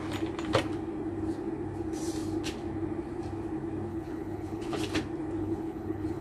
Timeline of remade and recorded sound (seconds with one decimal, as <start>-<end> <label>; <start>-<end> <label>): 0.0-3.9 recorded; 3.9-4.8 remade; 4.8-5.4 recorded; 5.4-6.2 remade